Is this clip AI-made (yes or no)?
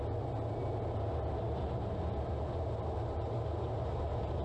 no